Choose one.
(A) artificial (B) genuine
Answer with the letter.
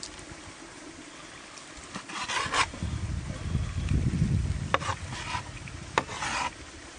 B